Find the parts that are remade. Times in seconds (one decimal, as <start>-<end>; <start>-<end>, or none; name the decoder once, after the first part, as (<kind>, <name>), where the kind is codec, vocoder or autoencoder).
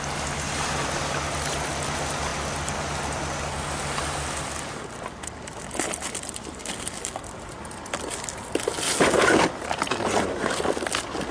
none